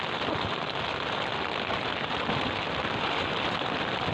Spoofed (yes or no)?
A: no